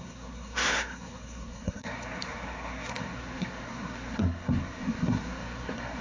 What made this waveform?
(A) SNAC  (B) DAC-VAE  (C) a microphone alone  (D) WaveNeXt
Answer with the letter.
A